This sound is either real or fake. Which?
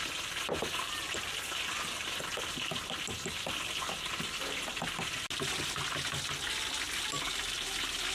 real